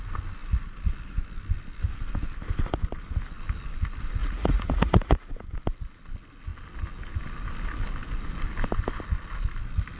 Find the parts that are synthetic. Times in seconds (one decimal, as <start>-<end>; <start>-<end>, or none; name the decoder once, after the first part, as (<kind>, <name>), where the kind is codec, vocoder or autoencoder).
4.2-5.3 (vocoder, Vocos)